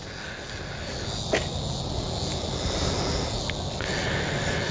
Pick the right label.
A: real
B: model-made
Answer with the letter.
A